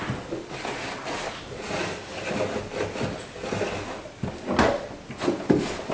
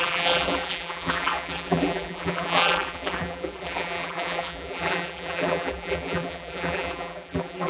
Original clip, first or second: first